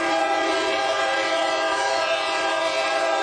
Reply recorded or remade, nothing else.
remade